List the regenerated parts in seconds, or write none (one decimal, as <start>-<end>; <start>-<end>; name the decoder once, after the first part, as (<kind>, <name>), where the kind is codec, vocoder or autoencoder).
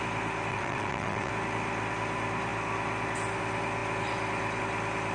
0.5-1.3 (vocoder, WaveNeXt)